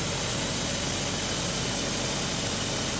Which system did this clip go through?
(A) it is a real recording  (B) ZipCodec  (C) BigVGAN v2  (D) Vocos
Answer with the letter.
A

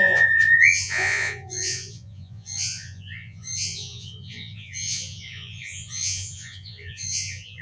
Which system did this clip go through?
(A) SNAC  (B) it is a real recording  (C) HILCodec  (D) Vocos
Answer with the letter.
D